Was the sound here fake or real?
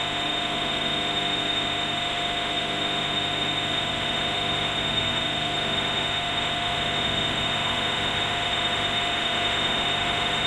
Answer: fake